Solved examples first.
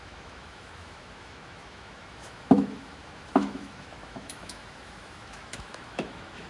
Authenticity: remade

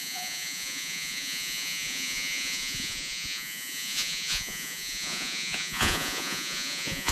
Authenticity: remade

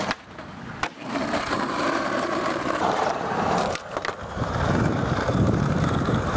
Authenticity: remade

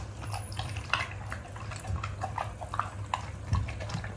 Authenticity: recorded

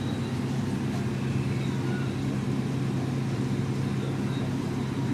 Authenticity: recorded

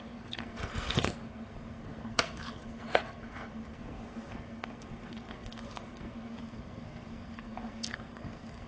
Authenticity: remade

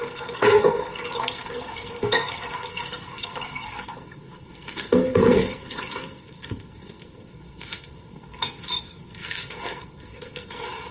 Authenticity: remade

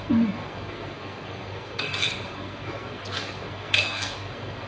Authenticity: remade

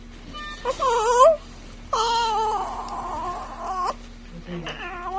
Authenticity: recorded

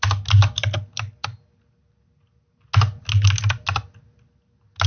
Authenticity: recorded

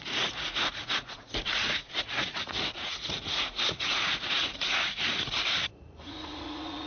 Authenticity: remade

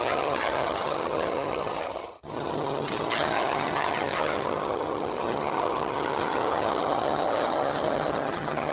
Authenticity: remade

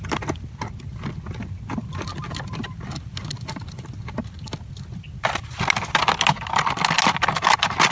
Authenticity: recorded